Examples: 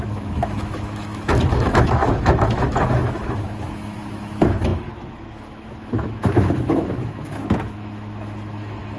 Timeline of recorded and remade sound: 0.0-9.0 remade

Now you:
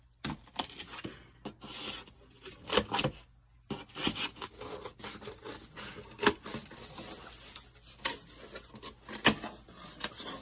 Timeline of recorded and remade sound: 0.0-10.4 recorded